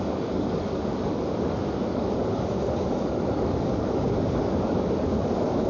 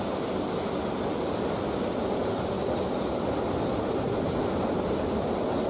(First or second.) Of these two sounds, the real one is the second